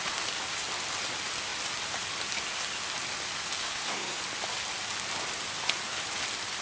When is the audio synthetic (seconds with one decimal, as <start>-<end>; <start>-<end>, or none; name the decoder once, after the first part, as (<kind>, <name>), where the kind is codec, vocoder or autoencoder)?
3.6-4.2 (codec, SNAC)